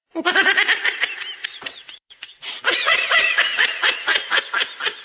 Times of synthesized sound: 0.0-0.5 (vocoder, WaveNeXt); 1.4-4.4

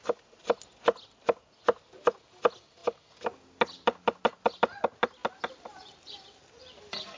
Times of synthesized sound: none